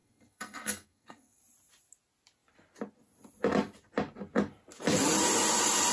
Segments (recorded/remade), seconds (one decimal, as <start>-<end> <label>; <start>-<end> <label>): 0.0-1.4 remade; 1.4-5.9 recorded